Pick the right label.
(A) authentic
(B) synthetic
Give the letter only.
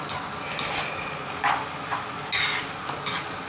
A